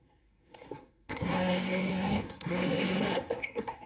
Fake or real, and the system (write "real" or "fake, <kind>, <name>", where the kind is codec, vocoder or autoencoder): fake, codec, SNAC